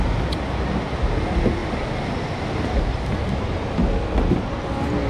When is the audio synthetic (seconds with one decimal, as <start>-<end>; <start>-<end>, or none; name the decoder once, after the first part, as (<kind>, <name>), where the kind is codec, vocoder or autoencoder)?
none